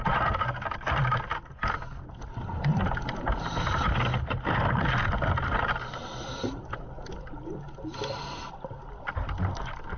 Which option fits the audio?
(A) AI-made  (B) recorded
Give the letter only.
B